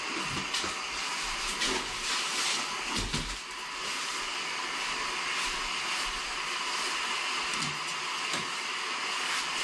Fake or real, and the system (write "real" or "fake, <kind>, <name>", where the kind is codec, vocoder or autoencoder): real